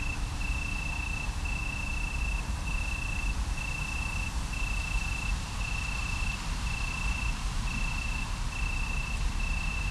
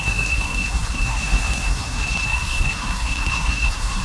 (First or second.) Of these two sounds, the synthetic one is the second